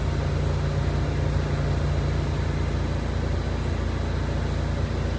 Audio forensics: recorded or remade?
recorded